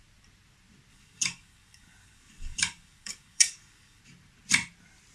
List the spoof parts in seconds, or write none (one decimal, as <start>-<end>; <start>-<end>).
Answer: 0.9-4.0